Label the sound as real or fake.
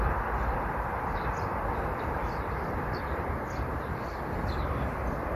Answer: fake